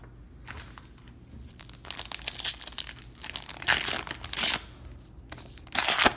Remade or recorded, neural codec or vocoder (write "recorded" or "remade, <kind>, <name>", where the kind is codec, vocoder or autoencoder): recorded